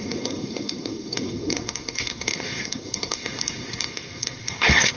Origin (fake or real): fake